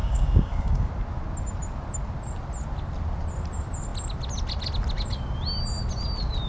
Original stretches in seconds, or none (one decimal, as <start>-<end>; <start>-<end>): 0.9-6.5